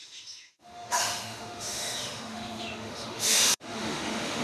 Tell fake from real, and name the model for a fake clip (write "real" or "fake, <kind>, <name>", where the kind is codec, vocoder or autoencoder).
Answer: fake, autoencoder, DAC-VAE